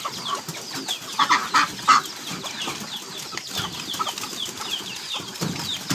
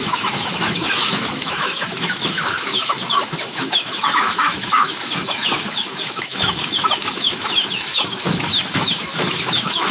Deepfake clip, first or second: second